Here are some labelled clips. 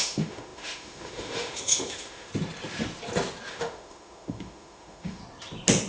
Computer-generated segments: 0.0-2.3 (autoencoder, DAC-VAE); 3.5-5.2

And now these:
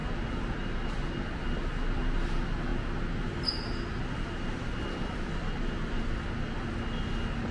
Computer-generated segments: none

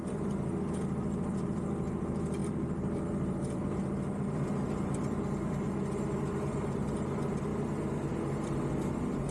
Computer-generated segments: 2.4-5.8 (vocoder, BigVGAN v2); 7.5-8.9

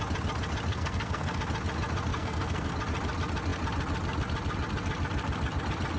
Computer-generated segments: 0.7-1.4 (codec, SNAC); 2.1-2.7

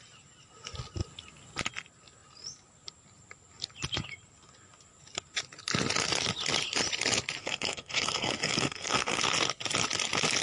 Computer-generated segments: 7.4-9.2 (codec, SNAC)

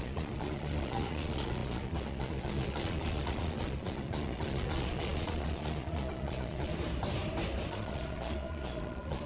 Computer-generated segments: 0.0-6.7 (vocoder, Vocos); 7.7-9.3